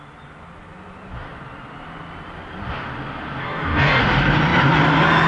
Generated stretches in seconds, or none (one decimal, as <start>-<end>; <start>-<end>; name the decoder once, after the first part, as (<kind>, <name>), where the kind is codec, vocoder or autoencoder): 3.4-4.0 (codec, DAC)